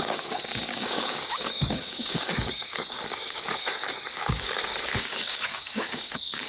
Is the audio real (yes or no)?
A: no